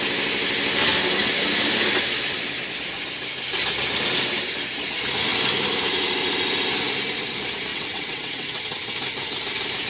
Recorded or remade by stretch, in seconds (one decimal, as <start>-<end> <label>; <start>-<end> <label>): 0.0-7.7 recorded; 7.7-8.9 remade; 8.9-9.9 recorded